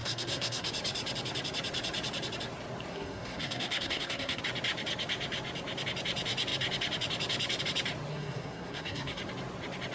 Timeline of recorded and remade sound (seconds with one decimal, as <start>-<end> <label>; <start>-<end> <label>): 0.0-0.7 remade; 0.7-2.9 recorded; 2.9-4.4 remade; 4.4-8.1 recorded; 8.1-9.2 remade; 9.2-9.9 recorded